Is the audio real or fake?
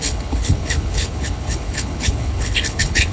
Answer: fake